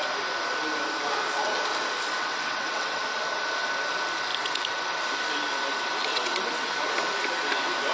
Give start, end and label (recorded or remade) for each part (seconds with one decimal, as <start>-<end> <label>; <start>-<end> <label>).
0.0-2.2 recorded; 2.2-3.0 remade; 3.0-6.1 recorded; 6.1-6.7 remade; 6.7-7.9 recorded